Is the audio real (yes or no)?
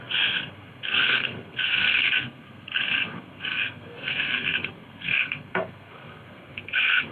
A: no